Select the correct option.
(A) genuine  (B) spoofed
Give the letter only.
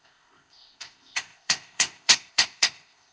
B